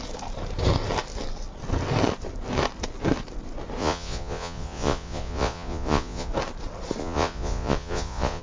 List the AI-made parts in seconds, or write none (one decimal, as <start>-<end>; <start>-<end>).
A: 3.8-6.3; 7.0-8.4